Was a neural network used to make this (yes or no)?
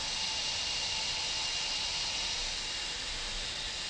no